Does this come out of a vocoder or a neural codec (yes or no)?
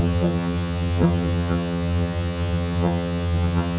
yes